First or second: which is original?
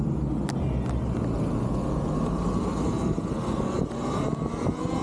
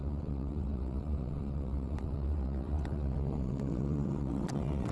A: first